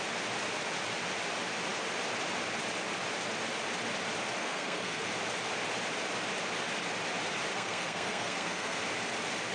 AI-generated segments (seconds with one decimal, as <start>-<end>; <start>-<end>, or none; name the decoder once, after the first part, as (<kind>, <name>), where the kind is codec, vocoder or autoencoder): 4.4-5.1 (codec, SNAC); 7.5-8.8